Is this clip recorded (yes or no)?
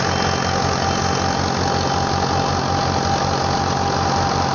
yes